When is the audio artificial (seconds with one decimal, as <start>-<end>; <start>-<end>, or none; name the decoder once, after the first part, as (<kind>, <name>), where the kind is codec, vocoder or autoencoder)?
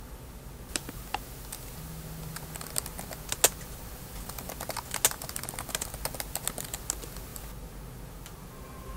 none